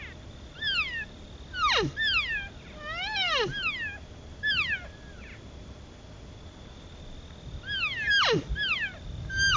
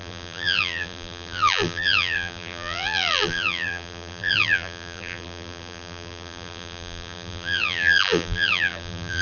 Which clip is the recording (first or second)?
first